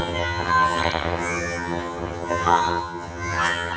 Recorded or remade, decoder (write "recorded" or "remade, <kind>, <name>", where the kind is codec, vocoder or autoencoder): remade, vocoder, HiFi-GAN